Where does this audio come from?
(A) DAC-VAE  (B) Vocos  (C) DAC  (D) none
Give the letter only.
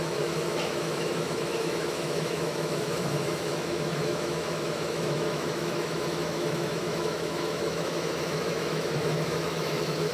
A